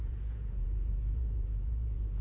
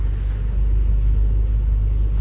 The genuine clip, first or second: second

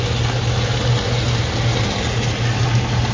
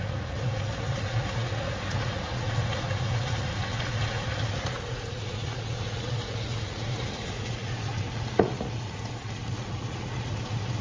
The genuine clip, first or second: first